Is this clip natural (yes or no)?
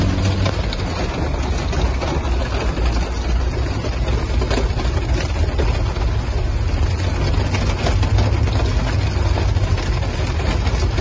yes